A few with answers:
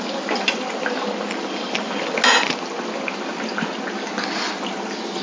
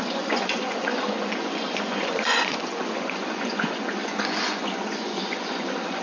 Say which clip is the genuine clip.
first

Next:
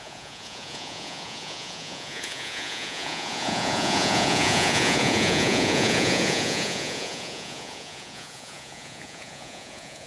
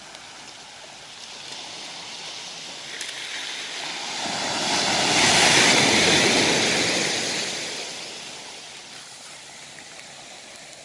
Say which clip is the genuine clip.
second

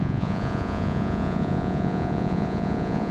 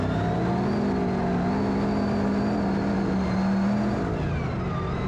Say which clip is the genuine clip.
second